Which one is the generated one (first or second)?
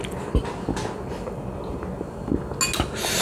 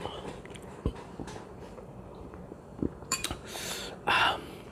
second